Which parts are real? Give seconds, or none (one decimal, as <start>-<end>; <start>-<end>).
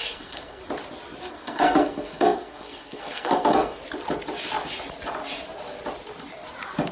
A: 0.6-1.3; 3.8-6.9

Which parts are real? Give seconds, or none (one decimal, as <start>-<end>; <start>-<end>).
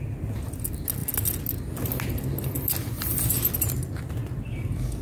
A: 0.0-5.0